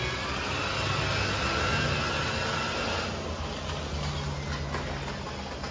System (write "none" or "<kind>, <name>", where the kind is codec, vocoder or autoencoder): none